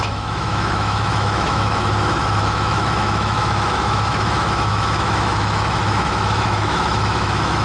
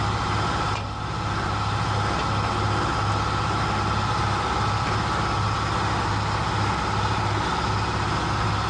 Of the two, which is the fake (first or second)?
first